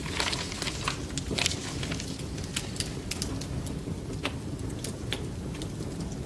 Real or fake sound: real